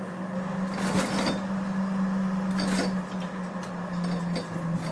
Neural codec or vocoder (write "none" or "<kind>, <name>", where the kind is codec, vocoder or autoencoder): none